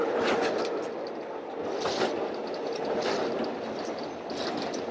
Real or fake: real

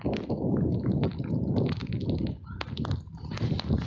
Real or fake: real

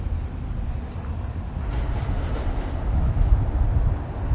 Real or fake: real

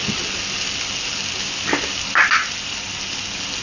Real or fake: real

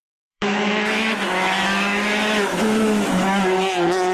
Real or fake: fake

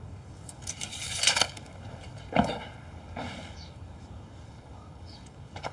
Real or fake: fake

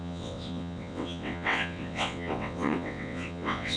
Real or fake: fake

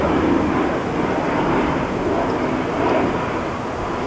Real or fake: real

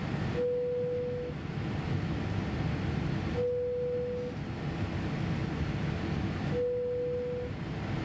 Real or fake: real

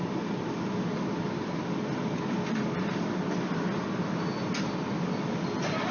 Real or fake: real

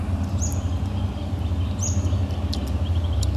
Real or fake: real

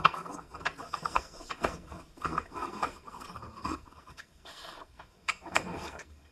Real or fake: fake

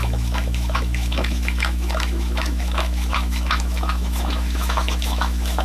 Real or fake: fake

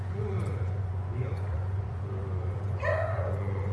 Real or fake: fake